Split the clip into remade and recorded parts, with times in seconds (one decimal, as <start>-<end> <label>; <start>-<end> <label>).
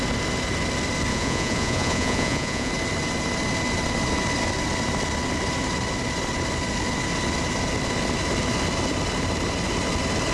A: 0.0-1.1 recorded; 1.1-2.7 remade; 2.7-10.3 recorded